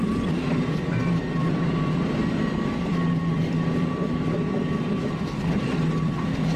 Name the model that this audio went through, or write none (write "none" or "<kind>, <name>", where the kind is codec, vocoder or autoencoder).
vocoder, BigVGAN v2